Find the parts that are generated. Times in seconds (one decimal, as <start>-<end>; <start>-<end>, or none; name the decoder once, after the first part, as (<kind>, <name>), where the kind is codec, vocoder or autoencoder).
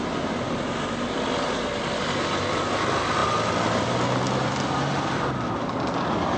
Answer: none